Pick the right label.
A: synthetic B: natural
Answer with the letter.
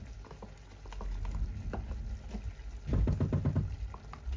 B